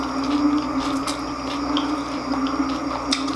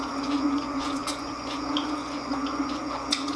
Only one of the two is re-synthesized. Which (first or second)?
second